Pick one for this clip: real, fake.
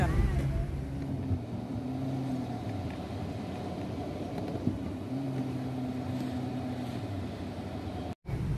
real